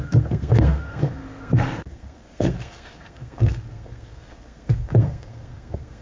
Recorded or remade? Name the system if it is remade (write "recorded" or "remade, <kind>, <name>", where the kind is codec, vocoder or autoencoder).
remade, codec, SNAC